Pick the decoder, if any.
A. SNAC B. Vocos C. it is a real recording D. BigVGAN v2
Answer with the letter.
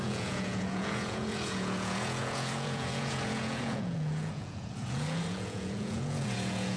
B